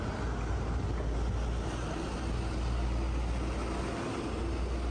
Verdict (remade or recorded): recorded